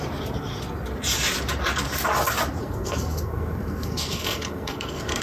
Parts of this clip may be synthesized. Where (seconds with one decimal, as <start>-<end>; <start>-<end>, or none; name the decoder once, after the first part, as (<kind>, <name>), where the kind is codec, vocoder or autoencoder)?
2.6-5.2 (codec, SNAC)